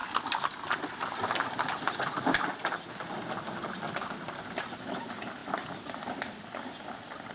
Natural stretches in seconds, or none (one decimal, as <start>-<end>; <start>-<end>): 0.0-7.3